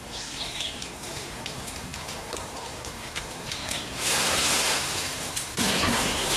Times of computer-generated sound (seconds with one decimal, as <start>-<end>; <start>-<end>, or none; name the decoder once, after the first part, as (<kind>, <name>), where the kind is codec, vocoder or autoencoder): 0.0-6.4 (codec, SNAC)